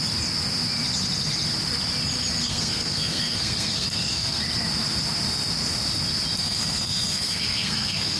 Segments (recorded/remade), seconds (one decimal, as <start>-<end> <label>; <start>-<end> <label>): 0.0-2.4 recorded; 2.4-4.4 remade; 4.4-6.4 recorded; 6.4-8.2 remade